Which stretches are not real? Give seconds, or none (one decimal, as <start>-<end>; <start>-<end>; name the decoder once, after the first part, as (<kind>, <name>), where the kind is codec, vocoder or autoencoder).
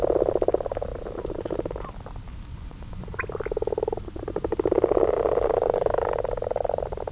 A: 2.3-3.2 (vocoder, Vocos)